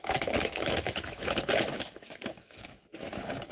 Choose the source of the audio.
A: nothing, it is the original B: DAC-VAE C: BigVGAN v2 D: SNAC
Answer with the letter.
B